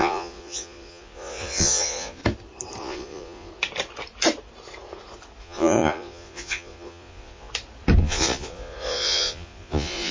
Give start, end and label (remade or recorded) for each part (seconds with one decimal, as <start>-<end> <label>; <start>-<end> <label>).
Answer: 0.0-2.2 remade; 2.2-2.8 recorded; 2.8-3.5 remade; 3.5-5.4 recorded; 5.4-7.5 remade; 7.5-8.0 recorded; 8.0-10.1 remade